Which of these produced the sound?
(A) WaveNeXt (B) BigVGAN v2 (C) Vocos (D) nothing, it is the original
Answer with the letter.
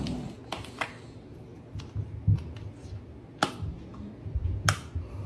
D